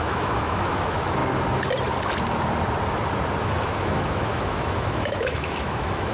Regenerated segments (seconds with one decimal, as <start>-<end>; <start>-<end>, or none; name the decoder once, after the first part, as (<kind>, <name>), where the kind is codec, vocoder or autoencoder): 0.0-1.2 (autoencoder, DAC-VAE); 3.5-6.1